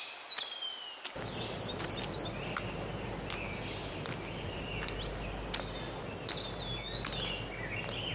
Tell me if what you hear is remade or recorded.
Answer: recorded